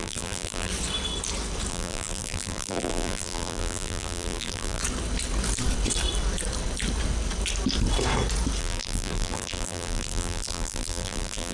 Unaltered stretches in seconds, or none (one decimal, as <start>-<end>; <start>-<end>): 0.7-1.7; 4.8-8.6